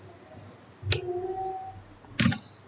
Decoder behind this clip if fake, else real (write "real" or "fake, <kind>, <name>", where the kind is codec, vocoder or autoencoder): real